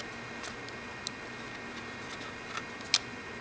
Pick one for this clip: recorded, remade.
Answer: recorded